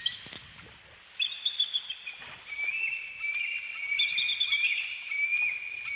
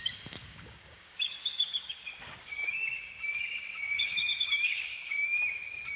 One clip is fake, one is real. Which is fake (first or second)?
second